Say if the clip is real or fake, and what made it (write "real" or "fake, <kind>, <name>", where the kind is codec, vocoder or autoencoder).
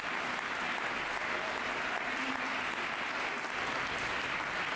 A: real